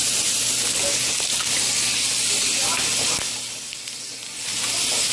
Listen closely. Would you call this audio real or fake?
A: real